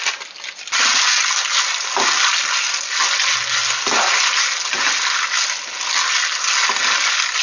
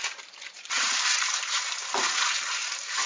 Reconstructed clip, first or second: second